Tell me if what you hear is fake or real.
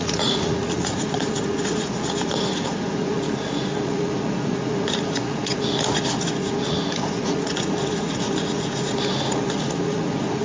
fake